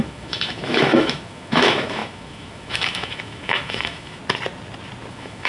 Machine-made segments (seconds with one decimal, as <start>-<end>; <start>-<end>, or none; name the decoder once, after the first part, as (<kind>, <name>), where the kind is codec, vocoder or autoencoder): 0.0-4.2 (autoencoder, DAC-VAE); 5.1-5.5